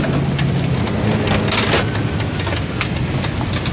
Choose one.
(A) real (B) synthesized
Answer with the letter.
A